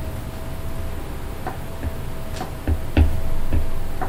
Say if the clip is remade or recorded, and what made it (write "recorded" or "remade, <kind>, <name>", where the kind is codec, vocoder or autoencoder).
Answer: recorded